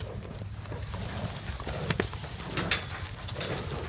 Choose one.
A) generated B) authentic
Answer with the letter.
B